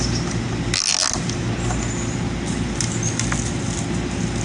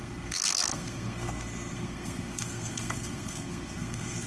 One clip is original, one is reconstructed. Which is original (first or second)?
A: first